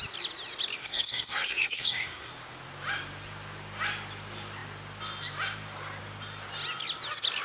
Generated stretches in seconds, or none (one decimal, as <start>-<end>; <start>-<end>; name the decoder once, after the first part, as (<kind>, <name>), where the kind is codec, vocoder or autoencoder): 0.8-2.3 (codec, SNAC)